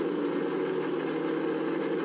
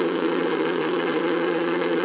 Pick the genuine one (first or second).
first